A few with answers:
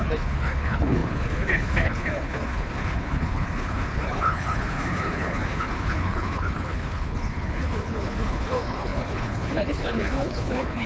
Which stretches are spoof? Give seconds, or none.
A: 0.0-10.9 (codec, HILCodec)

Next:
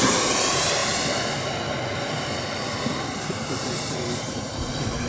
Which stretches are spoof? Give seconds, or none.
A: 0.0-0.8 (vocoder, BigVGAN v2); 3.0-5.1

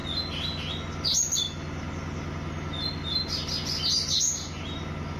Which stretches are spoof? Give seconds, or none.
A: none

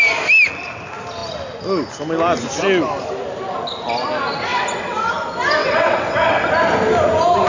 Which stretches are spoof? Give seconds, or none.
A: 4.5-5.1 (vocoder, WaveNeXt); 5.6-6.5